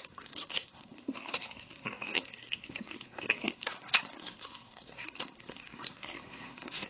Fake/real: fake